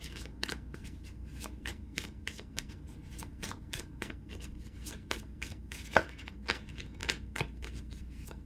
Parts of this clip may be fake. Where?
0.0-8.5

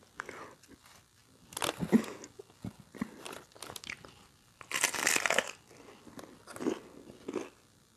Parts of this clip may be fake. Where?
none